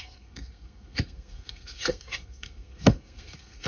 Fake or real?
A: fake